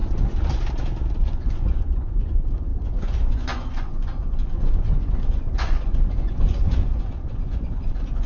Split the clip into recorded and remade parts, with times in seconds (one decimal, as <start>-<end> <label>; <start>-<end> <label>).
0.0-1.2 recorded; 1.2-8.3 remade